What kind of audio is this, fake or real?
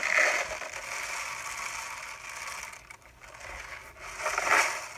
real